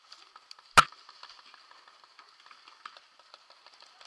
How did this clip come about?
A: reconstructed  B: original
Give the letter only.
B